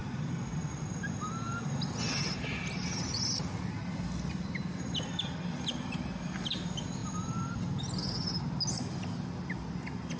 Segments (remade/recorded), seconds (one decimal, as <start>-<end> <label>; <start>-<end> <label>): 0.0-10.2 recorded